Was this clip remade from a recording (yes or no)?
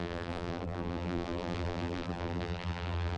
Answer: yes